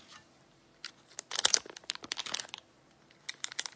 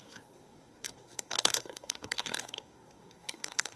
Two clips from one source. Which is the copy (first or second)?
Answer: second